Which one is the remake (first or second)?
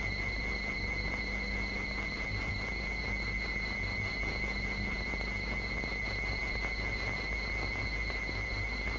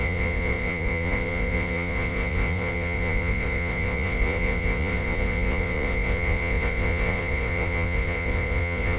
second